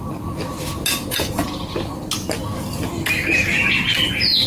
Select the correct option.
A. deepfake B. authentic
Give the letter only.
B